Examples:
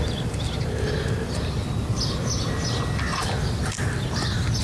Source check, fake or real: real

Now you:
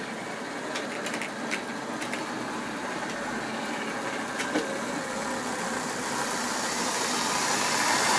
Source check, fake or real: real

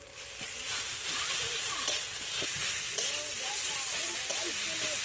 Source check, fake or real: real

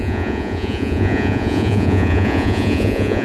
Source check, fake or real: fake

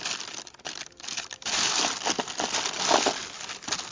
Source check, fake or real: real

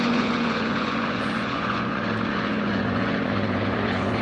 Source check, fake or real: fake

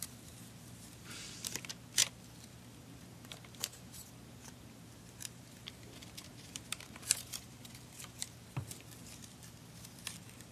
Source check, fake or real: fake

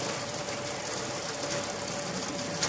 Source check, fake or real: real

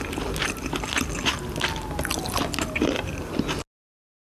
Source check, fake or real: real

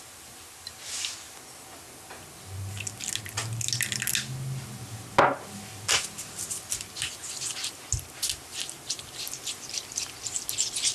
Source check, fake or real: real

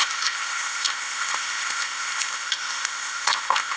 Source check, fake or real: fake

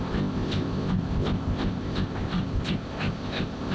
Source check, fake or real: fake